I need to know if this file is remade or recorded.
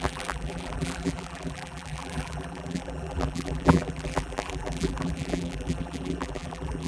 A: remade